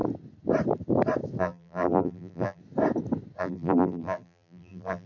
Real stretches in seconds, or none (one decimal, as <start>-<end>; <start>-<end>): 0.0-1.4; 2.6-3.4